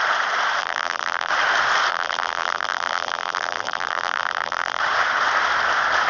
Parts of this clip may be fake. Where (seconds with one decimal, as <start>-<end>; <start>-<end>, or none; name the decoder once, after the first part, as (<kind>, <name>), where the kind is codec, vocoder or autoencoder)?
0.6-1.3 (vocoder, BigVGAN v2); 1.9-4.8